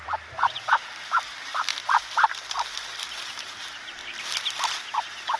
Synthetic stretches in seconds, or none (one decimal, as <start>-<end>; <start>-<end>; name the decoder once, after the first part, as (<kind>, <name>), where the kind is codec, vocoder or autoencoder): 0.0-1.7 (vocoder, BigVGAN v2); 3.3-4.0; 4.8-5.4